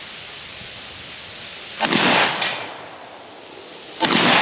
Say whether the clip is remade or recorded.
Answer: recorded